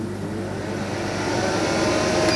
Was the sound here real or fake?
real